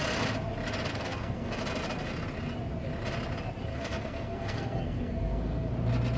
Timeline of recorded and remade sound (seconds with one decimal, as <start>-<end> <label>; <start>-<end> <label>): 0.0-0.9 recorded; 0.9-1.6 remade; 1.6-3.7 recorded; 3.7-5.7 remade; 5.7-6.2 recorded